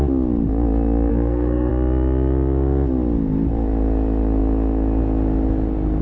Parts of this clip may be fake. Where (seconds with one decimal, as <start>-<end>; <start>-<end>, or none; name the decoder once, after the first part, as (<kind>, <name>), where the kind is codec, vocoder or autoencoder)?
1.1-1.7 (codec, SNAC)